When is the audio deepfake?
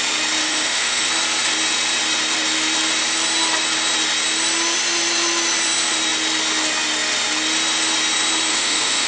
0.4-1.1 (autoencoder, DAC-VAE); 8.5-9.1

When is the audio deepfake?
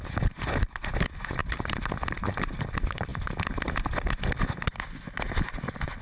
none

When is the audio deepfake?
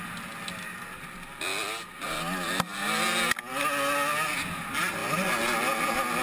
none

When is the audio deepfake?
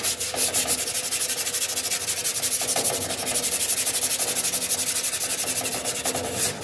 none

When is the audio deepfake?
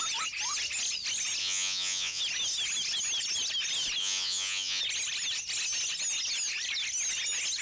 1.4-2.2 (vocoder, Vocos); 4.0-4.8